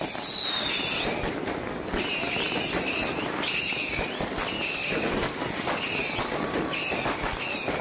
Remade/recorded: recorded